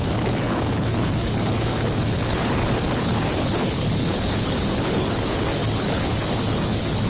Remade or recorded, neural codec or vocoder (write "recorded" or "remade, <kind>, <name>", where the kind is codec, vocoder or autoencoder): remade, codec, HILCodec